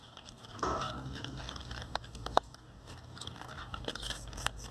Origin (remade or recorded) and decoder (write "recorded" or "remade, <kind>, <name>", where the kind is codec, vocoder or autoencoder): remade, codec, DAC